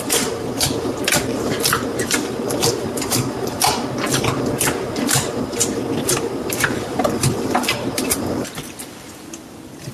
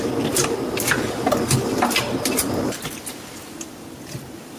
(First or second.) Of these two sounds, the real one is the second